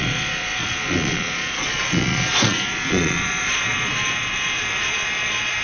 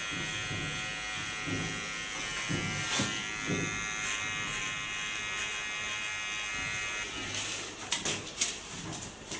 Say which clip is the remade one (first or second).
first